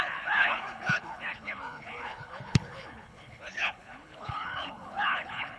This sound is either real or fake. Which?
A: fake